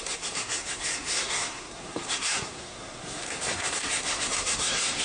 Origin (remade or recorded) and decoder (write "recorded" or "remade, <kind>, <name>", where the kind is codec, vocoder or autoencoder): remade, codec, SNAC